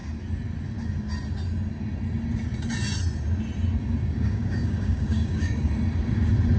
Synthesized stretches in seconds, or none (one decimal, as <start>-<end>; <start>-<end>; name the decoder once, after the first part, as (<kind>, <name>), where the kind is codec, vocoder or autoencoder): 3.8-5.7 (codec, DAC)